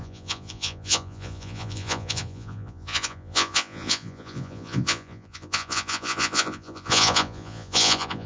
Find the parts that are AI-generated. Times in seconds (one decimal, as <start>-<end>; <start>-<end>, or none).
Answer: 0.0-8.3